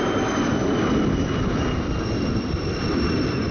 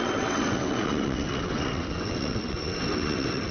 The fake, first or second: second